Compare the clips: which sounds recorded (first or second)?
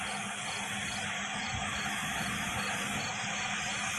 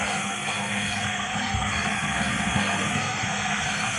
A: first